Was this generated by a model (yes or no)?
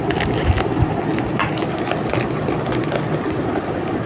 no